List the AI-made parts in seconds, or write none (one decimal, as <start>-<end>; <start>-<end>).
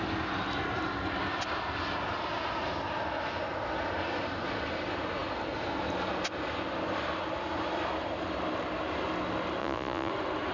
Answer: 9.6-10.1